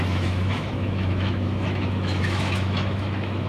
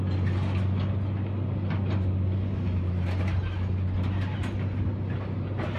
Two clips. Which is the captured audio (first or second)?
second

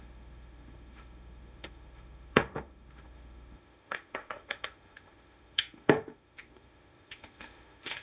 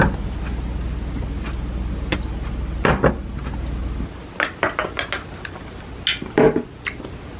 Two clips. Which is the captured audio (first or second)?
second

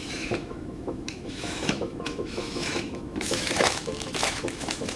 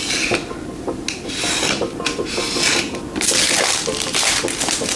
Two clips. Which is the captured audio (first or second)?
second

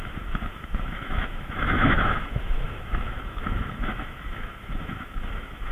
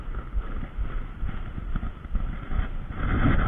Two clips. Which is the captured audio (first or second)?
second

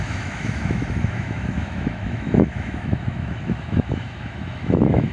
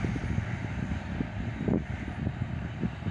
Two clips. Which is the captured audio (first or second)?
second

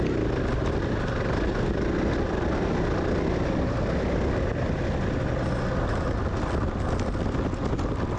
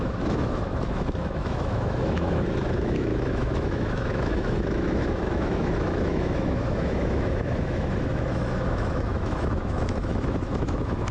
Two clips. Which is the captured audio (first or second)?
first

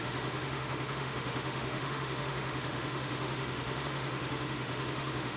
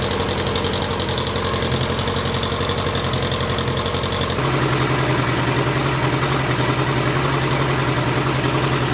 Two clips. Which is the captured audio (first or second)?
second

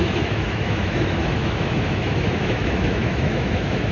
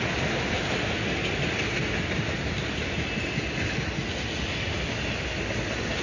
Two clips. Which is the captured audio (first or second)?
second